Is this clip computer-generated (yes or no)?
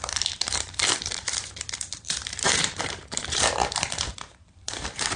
yes